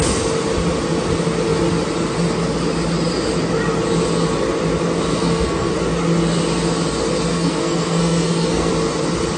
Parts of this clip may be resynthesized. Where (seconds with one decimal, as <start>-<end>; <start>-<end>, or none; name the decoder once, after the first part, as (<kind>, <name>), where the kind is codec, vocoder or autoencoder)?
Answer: 5.1-5.7 (codec, SNAC); 7.3-8.7